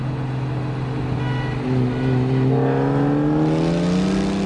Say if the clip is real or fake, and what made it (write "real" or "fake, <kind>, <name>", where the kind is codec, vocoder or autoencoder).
real